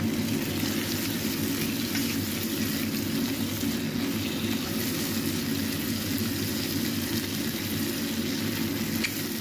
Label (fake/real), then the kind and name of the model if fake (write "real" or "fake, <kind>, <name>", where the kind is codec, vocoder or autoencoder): real